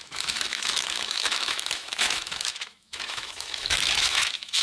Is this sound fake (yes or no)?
yes